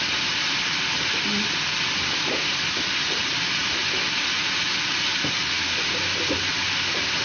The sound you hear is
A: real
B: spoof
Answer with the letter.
A